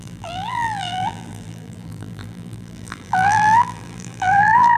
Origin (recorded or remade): remade